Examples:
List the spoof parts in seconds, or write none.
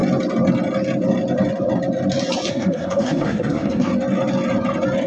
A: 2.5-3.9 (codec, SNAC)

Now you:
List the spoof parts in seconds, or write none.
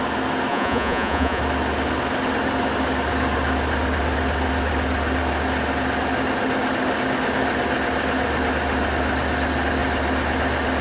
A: 0.5-1.4 (vocoder, Vocos)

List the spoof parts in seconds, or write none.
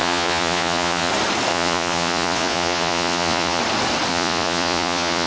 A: 0.0-1.1 (vocoder, Vocos); 1.5-3.6; 4.1-5.3